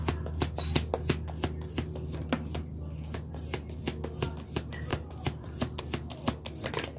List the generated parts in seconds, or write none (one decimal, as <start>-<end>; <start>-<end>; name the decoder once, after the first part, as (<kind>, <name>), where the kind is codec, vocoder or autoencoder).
4.9-5.8 (vocoder, BigVGAN v2)